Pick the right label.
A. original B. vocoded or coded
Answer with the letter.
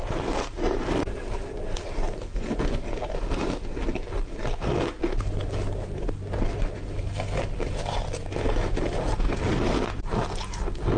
A